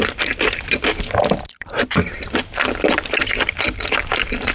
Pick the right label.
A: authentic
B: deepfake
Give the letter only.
B